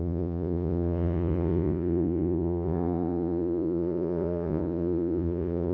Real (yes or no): no